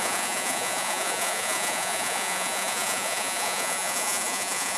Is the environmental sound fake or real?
fake